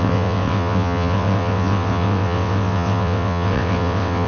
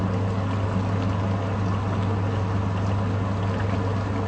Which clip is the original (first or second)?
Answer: second